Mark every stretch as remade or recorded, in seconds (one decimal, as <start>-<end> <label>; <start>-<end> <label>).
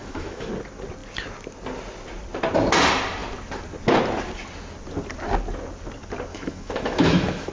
0.0-0.5 remade; 0.5-6.3 recorded; 6.3-7.5 remade